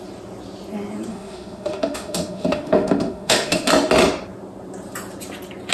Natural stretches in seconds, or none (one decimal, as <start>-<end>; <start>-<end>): 0.0-1.1; 3.7-5.7